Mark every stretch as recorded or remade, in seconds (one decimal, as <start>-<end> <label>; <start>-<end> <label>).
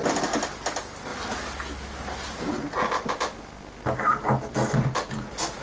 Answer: 0.0-5.6 recorded